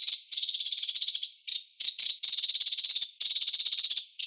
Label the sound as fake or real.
real